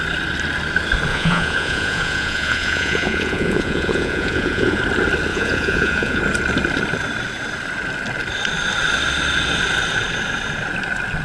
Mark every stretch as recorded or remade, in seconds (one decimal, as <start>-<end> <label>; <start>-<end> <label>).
0.0-1.1 recorded; 1.1-4.8 remade; 4.8-5.3 recorded; 5.3-6.2 remade; 6.2-11.2 recorded